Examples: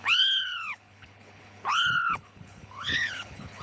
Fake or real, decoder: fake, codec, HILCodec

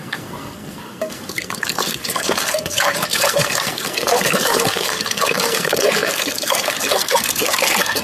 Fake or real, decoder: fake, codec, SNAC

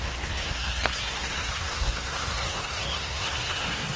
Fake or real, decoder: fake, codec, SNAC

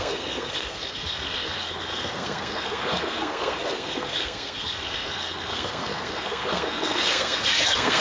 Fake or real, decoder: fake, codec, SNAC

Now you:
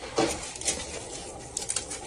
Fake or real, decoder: real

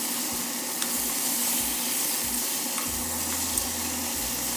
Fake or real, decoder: real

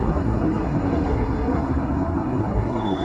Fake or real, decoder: fake, codec, SNAC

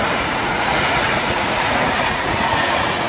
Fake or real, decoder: fake, vocoder, Vocos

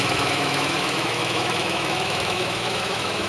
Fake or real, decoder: fake, autoencoder, DAC-VAE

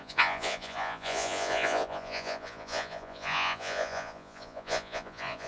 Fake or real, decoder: fake, vocoder, Vocos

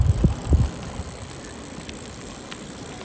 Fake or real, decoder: real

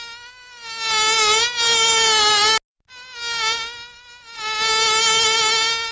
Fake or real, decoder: real